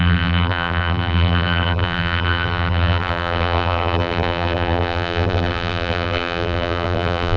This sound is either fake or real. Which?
fake